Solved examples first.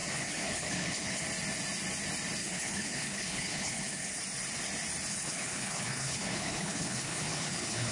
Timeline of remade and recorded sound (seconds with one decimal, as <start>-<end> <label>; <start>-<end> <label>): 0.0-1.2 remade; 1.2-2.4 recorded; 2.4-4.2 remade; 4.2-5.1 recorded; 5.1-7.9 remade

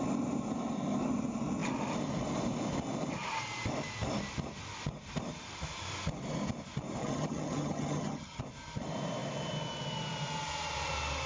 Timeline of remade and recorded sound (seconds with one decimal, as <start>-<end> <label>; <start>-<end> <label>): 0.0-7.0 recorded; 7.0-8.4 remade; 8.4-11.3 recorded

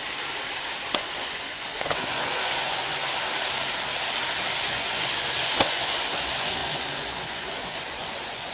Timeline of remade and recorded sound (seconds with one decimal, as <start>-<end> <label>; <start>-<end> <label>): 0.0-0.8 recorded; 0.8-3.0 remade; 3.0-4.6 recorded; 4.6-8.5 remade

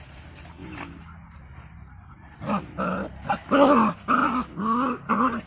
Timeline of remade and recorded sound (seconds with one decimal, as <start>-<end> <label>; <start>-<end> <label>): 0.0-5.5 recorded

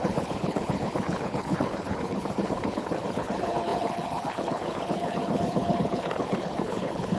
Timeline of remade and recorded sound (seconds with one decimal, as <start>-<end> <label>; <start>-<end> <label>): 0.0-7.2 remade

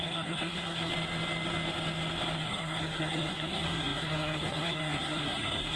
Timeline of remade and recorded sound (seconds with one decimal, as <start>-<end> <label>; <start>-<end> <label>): 0.0-0.9 remade; 0.9-2.4 recorded; 2.4-5.8 remade

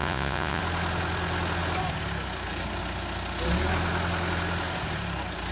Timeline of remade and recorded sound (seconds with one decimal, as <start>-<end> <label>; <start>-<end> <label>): 0.0-0.6 remade; 0.6-5.5 recorded

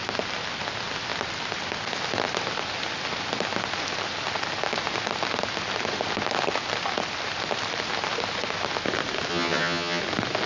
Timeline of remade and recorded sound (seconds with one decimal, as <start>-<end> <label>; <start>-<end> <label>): 0.0-9.3 recorded; 9.3-10.0 remade; 10.0-10.5 recorded